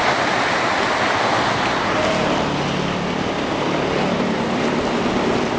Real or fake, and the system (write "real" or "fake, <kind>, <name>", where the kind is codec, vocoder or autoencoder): real